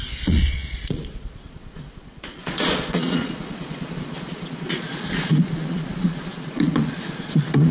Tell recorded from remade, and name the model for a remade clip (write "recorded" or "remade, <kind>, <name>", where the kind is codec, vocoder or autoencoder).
remade, vocoder, Vocos